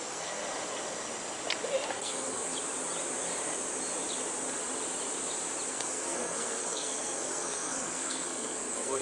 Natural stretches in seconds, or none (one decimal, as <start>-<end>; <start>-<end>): 0.4-1.9; 2.5-5.7